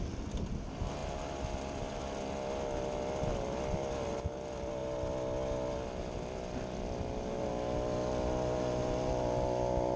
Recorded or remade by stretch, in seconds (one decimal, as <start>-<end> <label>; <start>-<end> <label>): 0.0-10.0 recorded